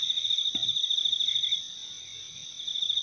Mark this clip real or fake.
real